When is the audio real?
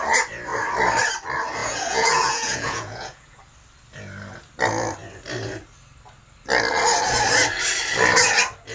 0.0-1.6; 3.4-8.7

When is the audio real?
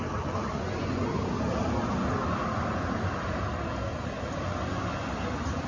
0.0-0.4; 1.0-5.7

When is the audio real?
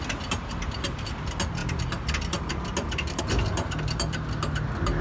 0.0-5.0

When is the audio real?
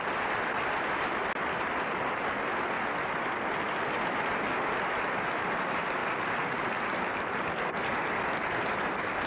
0.0-9.3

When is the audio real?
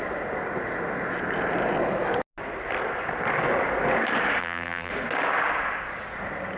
0.0-4.4; 4.9-6.6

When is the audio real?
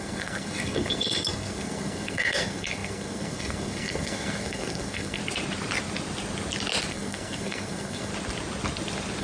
5.2-6.9; 8.1-9.2